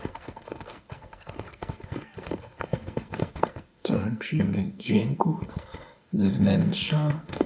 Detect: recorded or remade remade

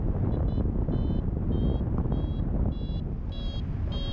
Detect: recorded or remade recorded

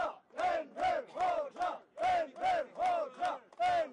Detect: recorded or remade recorded